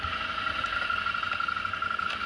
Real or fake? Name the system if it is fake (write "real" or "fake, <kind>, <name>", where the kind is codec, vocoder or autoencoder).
real